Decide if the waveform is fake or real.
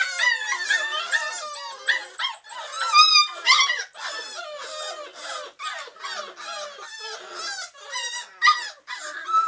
real